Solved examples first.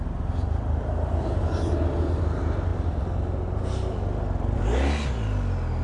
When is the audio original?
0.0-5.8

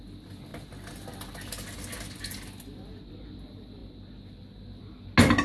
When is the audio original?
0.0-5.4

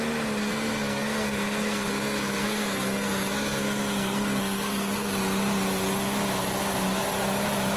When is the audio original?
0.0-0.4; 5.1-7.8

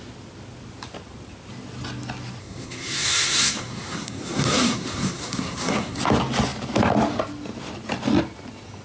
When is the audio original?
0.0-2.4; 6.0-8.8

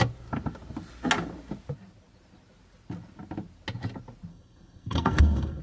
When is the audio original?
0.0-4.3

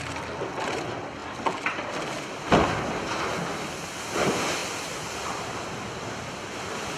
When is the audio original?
0.0-7.0

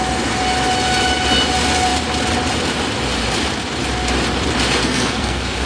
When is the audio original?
0.0-4.8

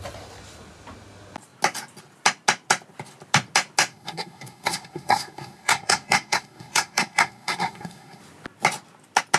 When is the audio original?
0.0-3.9; 8.2-9.4